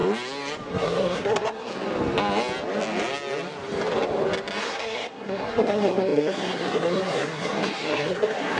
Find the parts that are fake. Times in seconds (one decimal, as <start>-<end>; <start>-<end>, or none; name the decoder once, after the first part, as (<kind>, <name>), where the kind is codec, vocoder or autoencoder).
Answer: 0.7-1.7 (codec, SNAC); 4.6-8.6